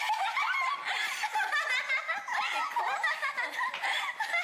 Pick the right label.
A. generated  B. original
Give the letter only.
B